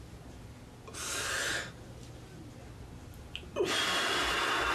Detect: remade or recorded recorded